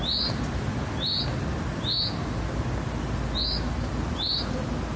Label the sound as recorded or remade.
recorded